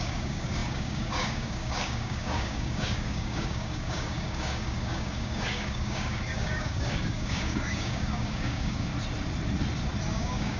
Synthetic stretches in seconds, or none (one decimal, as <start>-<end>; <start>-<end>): 0.0-8.9; 10.1-10.6